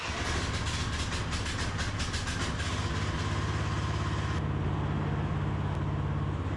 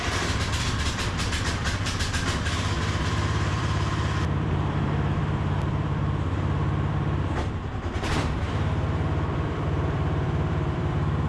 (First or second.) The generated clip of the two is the second